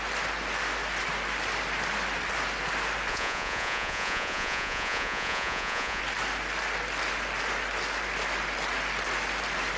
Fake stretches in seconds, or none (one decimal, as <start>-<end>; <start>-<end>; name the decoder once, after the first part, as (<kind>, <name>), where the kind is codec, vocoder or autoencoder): 3.1-6.0 (vocoder, Vocos)